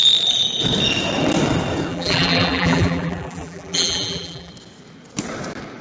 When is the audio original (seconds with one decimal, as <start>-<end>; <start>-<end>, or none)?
0.0-1.9; 4.5-5.8